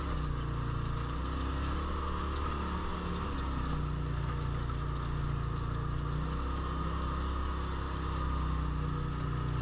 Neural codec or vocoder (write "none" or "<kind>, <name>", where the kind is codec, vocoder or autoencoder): none